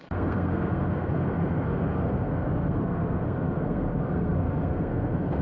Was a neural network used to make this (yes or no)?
yes